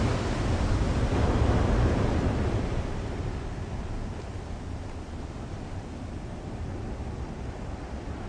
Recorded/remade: recorded